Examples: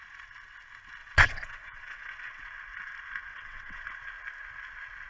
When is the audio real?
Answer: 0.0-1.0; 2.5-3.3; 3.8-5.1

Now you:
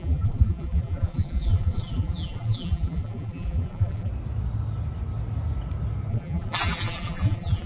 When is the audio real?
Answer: 4.1-6.1

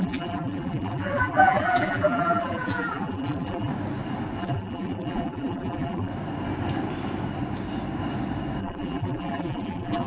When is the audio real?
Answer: 3.7-4.4; 6.1-8.6

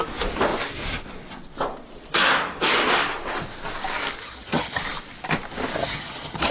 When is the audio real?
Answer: 0.0-4.2; 4.8-5.8

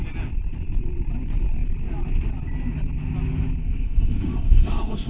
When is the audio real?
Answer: 0.0-3.6

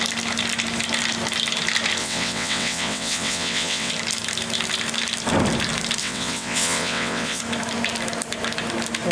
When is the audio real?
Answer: 0.0-2.0; 3.9-6.0; 7.4-9.1